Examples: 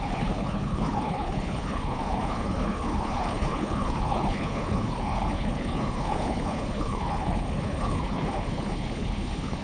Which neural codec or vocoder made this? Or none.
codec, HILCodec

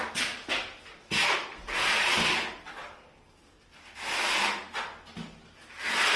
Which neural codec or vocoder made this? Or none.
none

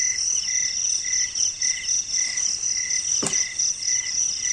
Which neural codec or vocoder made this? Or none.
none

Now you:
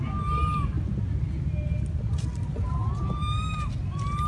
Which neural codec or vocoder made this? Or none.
none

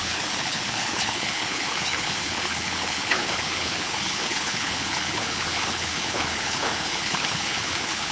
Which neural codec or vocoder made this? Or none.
codec, HILCodec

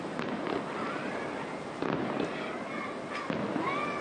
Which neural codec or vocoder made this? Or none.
none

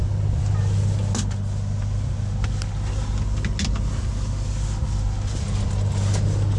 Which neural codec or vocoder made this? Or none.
none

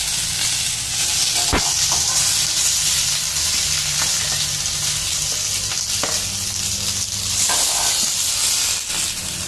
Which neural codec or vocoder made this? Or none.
none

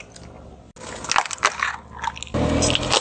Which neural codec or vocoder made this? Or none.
none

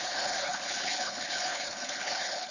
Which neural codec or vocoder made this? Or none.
codec, HILCodec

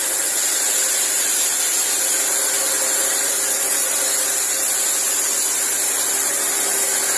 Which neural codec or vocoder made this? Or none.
none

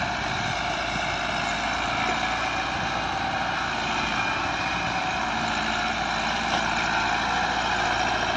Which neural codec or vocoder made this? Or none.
none